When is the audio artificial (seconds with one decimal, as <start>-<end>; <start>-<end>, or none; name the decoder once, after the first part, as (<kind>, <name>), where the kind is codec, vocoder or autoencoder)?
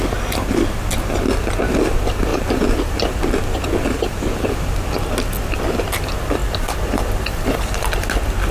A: 2.3-2.9 (vocoder, BigVGAN v2); 6.4-7.6